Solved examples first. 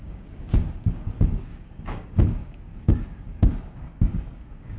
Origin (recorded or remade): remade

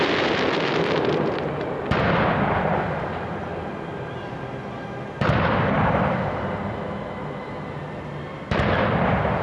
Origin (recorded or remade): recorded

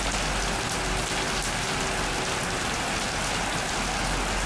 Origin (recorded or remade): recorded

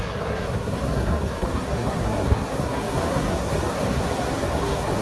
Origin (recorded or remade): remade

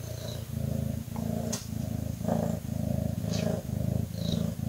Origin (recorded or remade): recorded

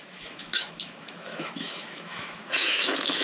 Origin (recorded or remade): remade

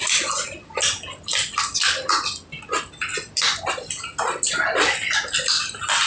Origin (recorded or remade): recorded